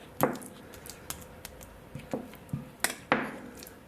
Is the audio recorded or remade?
recorded